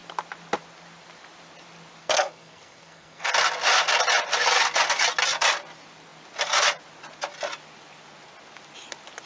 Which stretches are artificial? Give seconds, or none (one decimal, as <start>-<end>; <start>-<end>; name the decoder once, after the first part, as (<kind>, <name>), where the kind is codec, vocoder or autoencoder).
2.0-3.3 (codec, SNAC)